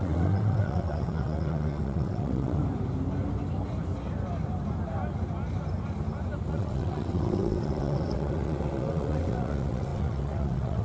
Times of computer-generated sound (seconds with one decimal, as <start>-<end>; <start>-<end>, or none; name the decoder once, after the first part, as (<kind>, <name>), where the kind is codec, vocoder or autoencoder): 0.0-2.6 (vocoder, WaveNeXt); 6.5-10.8